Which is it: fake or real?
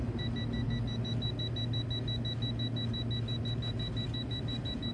real